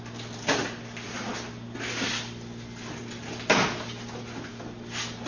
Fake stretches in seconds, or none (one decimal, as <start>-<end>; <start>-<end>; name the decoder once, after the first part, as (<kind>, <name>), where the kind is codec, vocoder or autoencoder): none